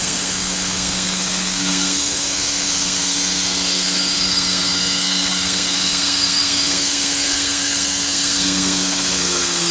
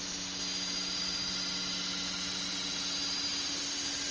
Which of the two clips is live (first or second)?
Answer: second